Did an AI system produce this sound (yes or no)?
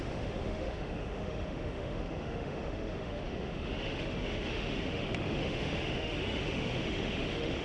yes